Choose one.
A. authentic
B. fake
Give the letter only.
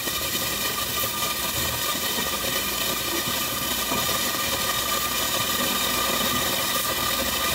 A